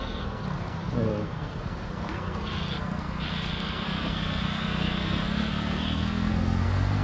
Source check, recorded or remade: remade